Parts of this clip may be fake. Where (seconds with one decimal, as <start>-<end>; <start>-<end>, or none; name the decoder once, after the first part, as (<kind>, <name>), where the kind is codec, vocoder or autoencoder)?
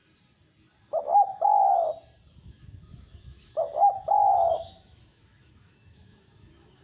1.0-1.9 (autoencoder, DAC-VAE); 2.4-6.8